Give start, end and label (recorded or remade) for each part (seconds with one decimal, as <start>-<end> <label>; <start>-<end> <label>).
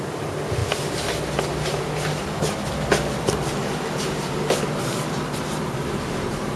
0.0-4.9 recorded; 4.9-6.6 remade